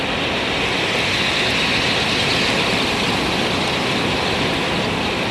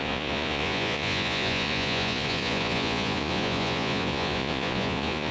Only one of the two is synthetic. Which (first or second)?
second